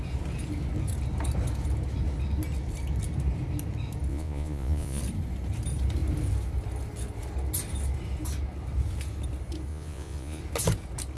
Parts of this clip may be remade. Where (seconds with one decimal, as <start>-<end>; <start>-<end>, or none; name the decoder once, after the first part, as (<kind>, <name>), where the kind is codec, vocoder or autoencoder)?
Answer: 4.1-5.0 (vocoder, Vocos); 9.7-10.4